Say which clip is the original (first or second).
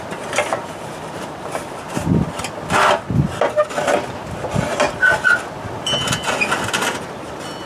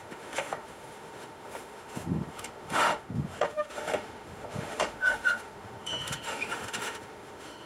first